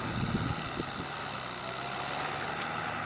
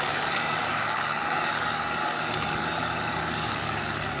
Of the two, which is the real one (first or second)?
first